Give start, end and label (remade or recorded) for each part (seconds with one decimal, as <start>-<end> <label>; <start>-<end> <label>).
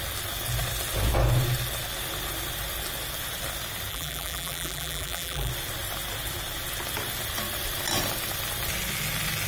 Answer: 0.0-3.9 recorded; 3.9-5.5 remade; 5.5-9.5 recorded